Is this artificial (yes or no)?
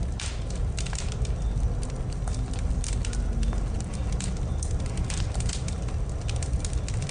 no